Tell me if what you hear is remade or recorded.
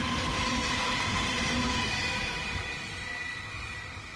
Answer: recorded